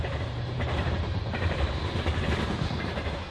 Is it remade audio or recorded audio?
remade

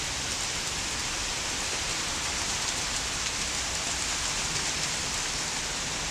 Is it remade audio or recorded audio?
recorded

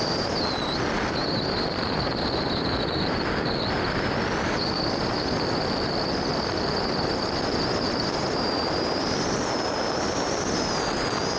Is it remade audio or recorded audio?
recorded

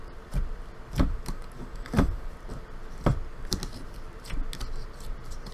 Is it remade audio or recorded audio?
recorded